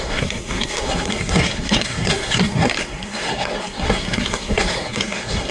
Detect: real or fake fake